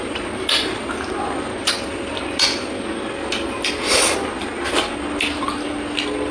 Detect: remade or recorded recorded